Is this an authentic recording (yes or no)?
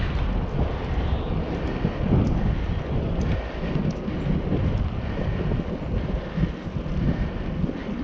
yes